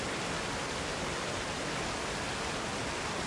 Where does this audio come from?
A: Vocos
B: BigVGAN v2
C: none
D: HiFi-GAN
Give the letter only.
C